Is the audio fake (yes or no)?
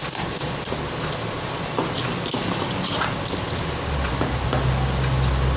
no